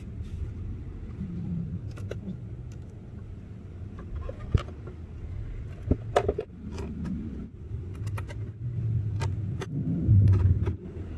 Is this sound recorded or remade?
recorded